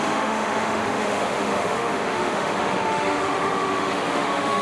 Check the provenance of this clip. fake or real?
fake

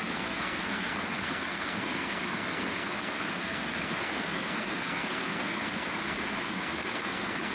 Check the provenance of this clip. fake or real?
fake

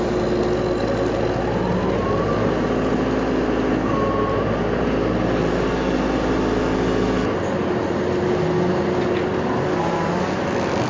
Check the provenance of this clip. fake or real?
real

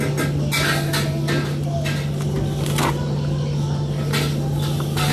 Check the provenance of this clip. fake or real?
real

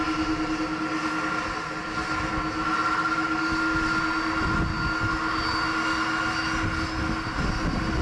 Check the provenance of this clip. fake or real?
real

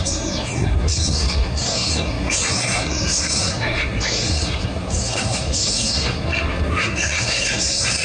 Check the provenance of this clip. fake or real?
fake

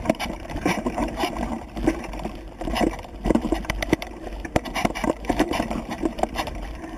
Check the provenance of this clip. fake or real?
fake